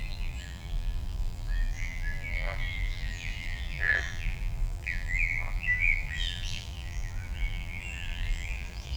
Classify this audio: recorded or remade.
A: remade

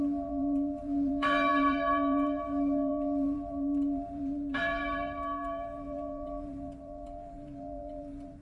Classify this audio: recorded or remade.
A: remade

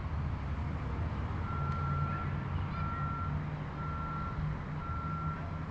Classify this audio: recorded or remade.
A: recorded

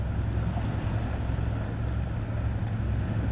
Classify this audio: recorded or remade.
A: recorded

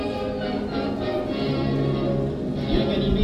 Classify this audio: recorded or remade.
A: recorded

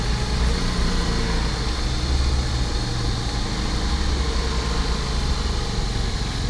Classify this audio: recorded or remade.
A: recorded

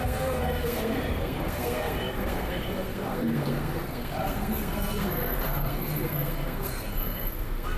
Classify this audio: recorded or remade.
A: remade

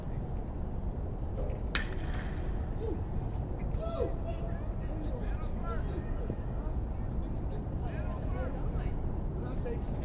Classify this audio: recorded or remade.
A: recorded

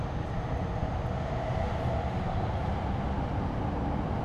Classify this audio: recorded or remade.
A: recorded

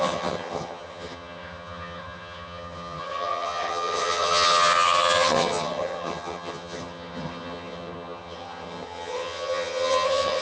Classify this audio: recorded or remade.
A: remade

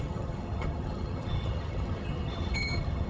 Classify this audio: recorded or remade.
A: remade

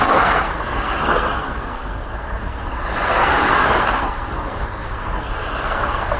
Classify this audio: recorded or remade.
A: remade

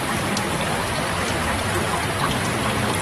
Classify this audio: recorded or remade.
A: recorded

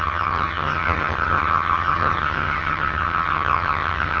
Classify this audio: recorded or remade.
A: remade